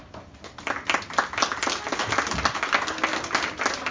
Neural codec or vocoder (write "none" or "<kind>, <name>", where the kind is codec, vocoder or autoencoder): none